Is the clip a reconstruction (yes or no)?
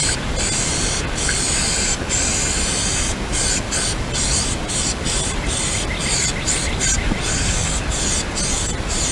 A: no